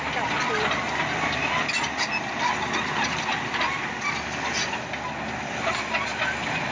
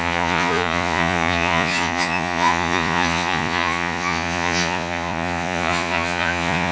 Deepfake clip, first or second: second